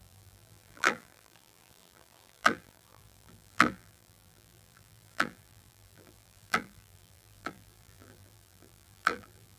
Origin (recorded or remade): remade